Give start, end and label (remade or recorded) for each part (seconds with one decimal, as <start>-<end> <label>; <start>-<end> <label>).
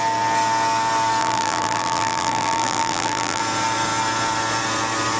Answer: 0.0-1.2 recorded; 1.2-3.4 remade; 3.4-5.2 recorded